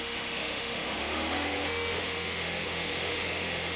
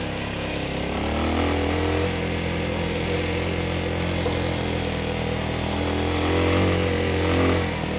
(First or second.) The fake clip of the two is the first